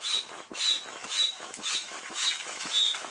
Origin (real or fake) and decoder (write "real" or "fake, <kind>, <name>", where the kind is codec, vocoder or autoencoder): fake, autoencoder, DAC-VAE